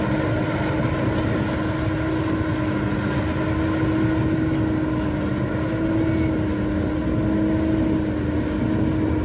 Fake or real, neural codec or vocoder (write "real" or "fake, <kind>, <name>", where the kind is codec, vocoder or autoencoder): real